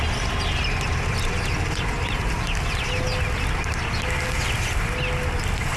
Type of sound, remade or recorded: recorded